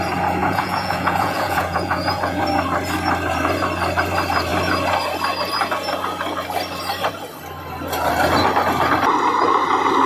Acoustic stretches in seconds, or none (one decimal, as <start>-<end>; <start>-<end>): 0.0-0.4; 2.4-10.1